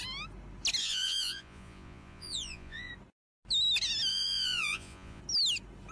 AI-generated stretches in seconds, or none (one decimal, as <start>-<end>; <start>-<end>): 0.8-2.9; 4.1-5.2